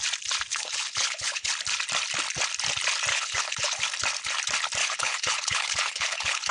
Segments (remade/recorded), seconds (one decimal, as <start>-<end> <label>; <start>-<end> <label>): 0.0-0.5 recorded; 0.5-1.5 remade; 1.5-3.1 recorded; 3.1-3.8 remade; 3.8-4.8 recorded; 4.8-6.5 remade